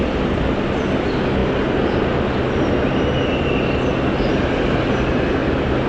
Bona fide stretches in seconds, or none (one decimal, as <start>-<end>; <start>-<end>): 0.0-5.9